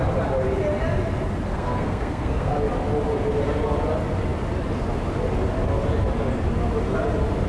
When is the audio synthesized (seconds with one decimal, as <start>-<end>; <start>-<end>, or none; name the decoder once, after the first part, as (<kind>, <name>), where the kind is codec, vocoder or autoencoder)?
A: 1.5-2.5 (codec, SNAC)